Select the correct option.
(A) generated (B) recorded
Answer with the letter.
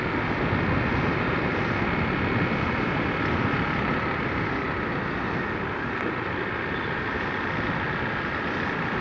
B